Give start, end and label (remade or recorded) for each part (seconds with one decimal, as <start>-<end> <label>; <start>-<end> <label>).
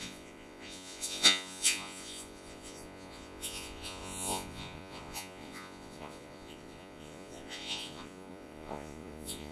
0.0-9.5 remade